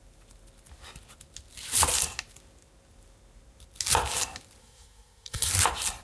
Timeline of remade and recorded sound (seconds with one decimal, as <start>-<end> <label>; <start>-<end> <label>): 0.0-4.6 recorded; 4.6-5.5 remade; 5.5-6.0 recorded